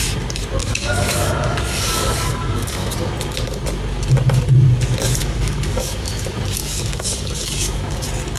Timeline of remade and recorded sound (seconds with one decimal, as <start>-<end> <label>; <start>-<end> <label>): 0.0-0.6 recorded; 0.6-2.9 remade; 2.9-5.2 recorded; 5.2-6.1 remade; 6.1-6.6 recorded; 6.6-8.0 remade; 8.0-8.4 recorded